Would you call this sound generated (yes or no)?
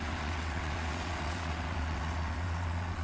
yes